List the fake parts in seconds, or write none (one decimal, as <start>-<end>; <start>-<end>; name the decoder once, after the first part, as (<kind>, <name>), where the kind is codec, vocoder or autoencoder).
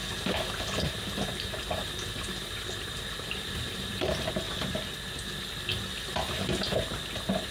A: 0.0-4.3 (vocoder, BigVGAN v2)